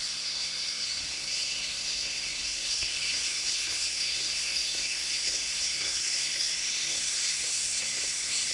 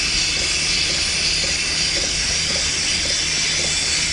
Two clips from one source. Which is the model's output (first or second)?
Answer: first